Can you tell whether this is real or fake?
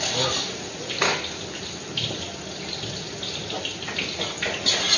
real